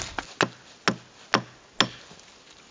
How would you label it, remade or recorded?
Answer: recorded